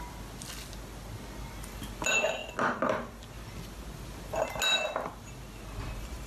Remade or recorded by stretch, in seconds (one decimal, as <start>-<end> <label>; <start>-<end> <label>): 0.0-6.3 recorded